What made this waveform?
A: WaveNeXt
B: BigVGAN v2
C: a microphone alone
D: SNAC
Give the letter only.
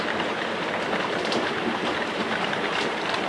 B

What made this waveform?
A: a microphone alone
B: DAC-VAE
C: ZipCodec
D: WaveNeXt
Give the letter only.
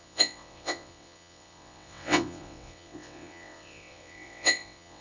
D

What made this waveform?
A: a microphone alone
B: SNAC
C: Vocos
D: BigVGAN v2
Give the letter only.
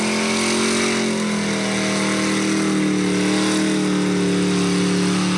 A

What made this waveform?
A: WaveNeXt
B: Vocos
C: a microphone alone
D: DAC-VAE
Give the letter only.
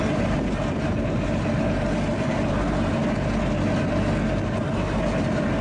C